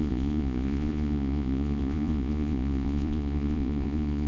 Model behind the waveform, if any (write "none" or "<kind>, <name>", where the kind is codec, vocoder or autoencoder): vocoder, Vocos